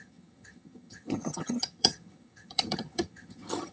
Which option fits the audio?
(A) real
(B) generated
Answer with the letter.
B